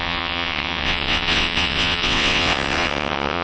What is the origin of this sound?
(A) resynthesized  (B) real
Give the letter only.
A